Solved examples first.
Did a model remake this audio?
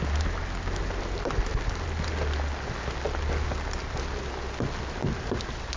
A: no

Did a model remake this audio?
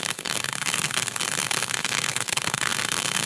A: yes